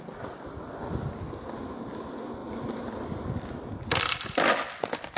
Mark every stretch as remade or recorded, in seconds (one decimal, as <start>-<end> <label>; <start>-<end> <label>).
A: 0.0-5.2 recorded